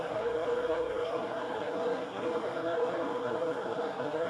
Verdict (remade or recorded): remade